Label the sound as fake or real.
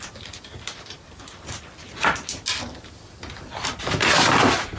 real